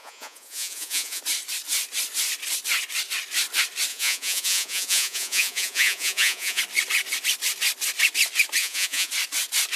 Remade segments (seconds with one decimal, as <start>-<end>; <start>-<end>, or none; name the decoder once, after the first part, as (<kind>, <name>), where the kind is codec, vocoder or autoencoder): 0.0-1.2 (vocoder, Vocos); 3.9-6.6; 8.6-9.1